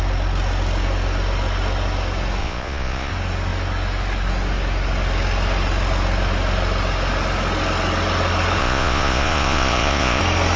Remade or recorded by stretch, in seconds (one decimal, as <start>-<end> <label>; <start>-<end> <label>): 0.0-2.4 recorded; 2.4-3.1 remade; 3.1-8.6 recorded; 8.6-10.2 remade; 10.2-10.6 recorded